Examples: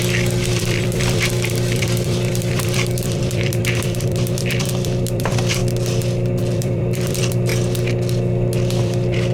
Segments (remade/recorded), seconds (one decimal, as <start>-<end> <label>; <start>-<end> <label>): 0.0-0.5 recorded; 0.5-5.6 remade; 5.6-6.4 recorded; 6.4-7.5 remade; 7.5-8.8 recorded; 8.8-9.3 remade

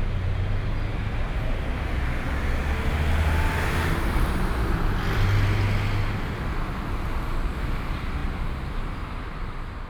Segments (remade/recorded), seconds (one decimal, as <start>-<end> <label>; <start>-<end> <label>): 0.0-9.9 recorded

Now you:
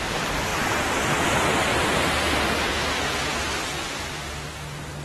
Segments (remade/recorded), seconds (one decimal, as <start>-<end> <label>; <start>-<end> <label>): 0.0-5.0 recorded